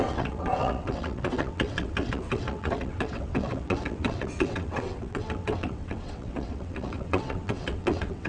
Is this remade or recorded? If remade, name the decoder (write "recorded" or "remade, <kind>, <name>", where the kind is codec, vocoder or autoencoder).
remade, vocoder, WaveNeXt